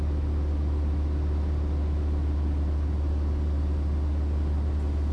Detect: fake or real real